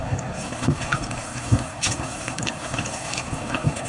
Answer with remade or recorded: remade